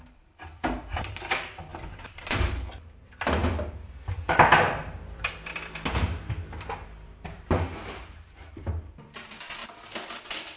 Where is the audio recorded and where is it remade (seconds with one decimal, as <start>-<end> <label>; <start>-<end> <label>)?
0.0-10.6 remade